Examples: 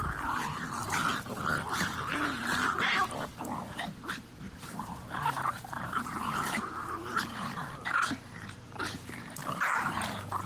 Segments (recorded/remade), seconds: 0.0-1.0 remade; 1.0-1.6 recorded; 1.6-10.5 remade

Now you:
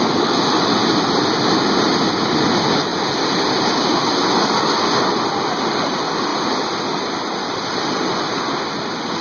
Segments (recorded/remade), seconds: 0.0-9.2 recorded

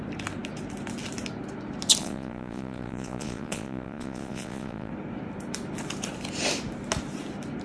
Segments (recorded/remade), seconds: 0.0-2.0 recorded; 2.0-4.9 remade; 4.9-7.6 recorded

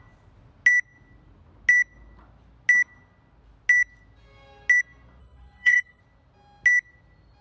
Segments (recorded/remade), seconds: 0.0-5.2 recorded; 5.2-6.0 remade; 6.0-7.4 recorded

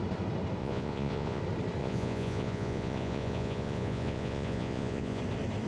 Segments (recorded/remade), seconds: 0.0-0.6 recorded; 0.6-1.4 remade; 1.4-1.8 recorded; 1.8-5.2 remade; 5.2-5.7 recorded

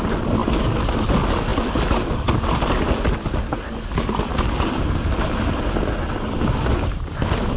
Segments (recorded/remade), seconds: 0.0-4.3 recorded; 4.3-5.0 remade; 5.0-7.6 recorded

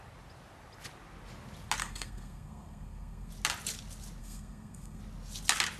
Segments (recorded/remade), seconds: 0.0-1.8 recorded; 1.8-3.3 remade; 3.3-4.2 recorded; 4.2-5.0 remade; 5.0-5.8 recorded

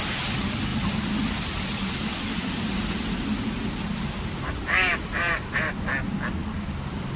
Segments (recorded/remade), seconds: 0.0-4.5 recorded; 4.5-5.7 remade; 5.7-7.2 recorded